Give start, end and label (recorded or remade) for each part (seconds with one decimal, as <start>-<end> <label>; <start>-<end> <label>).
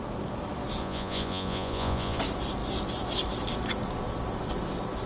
0.0-0.8 recorded; 0.8-2.2 remade; 2.2-5.1 recorded